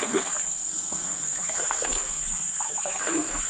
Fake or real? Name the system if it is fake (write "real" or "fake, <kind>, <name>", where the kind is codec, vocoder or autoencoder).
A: fake, codec, SNAC